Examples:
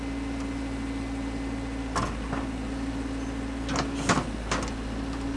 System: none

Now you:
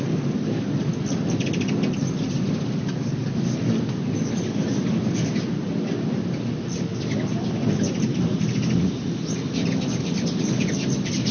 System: none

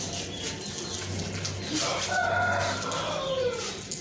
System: none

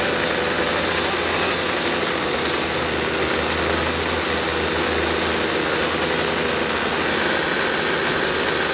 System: none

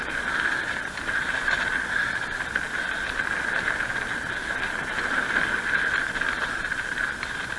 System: none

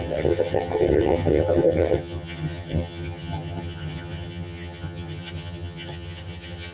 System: vocoder, HiFi-GAN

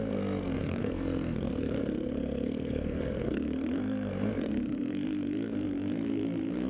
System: codec, SNAC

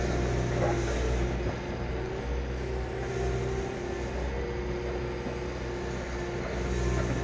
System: none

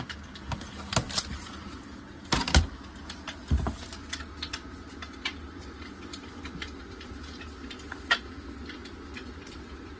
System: none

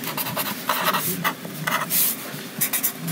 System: vocoder, BigVGAN v2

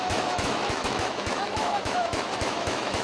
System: autoencoder, DAC-VAE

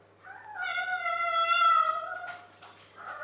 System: none